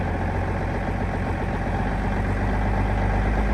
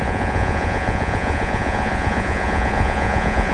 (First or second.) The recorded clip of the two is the first